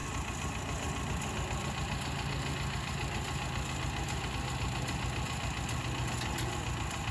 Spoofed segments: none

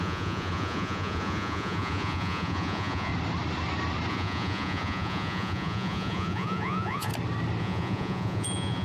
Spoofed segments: 0.0-3.1 (vocoder, Vocos); 4.1-7.1; 7.6-8.8

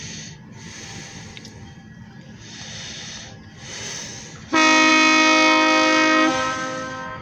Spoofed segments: none

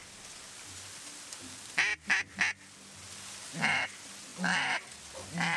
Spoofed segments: none